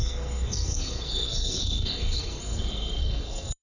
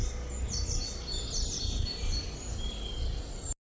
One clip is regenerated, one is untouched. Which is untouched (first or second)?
second